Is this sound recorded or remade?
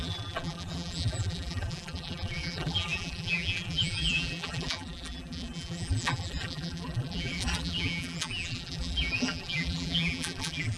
remade